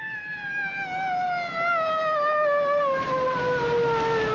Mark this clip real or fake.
real